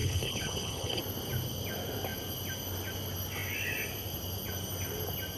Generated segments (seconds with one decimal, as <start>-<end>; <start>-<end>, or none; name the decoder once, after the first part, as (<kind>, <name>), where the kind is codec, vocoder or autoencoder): 0.0-1.0 (codec, HILCodec)

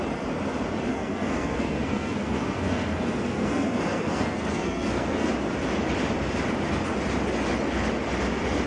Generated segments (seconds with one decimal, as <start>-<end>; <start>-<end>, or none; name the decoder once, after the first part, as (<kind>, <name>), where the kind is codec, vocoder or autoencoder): 0.9-5.3 (codec, SNAC)